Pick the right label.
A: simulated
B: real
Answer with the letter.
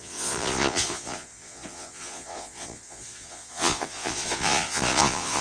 A